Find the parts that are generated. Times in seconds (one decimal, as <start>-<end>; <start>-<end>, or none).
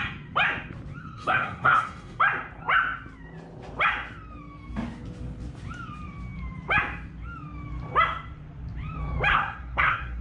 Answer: 1.0-2.2; 9.3-10.2